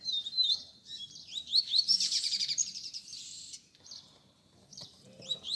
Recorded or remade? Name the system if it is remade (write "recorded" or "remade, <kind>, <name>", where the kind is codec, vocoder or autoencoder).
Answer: remade, vocoder, BigVGAN v2